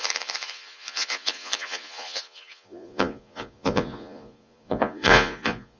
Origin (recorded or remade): remade